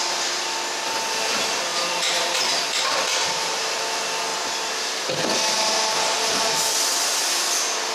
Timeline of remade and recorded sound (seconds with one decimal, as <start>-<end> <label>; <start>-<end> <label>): 0.0-1.7 recorded; 1.7-2.3 remade; 2.3-3.2 recorded; 3.2-3.8 remade; 3.8-7.9 recorded